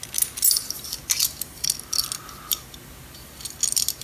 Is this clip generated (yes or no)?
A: no